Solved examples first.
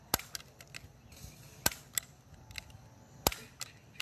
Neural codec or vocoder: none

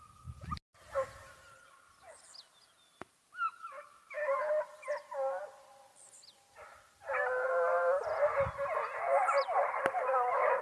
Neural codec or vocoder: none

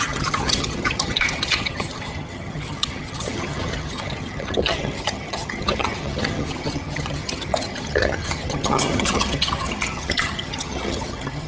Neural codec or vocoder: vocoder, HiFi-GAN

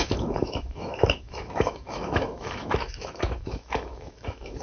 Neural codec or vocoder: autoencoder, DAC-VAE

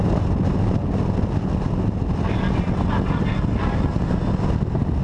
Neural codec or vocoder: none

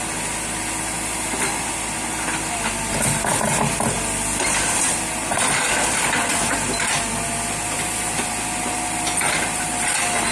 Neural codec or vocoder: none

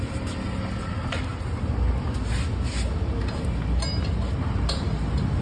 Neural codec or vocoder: none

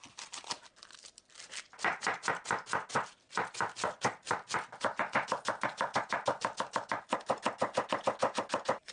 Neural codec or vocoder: none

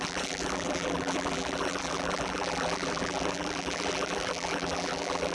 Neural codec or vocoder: vocoder, BigVGAN v2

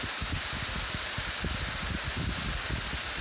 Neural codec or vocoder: none